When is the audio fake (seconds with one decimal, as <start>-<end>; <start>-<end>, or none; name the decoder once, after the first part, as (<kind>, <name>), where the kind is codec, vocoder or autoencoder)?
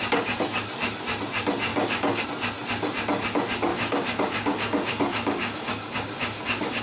1.7-2.2 (codec, DAC); 3.7-6.8